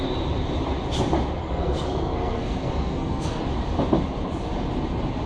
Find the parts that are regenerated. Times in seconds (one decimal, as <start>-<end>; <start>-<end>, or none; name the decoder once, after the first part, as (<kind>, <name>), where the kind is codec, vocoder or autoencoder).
1.4-3.4 (codec, SNAC)